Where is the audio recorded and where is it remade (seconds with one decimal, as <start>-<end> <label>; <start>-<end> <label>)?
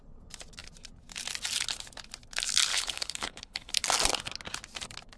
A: 0.0-2.7 recorded; 2.7-3.7 remade; 3.7-5.2 recorded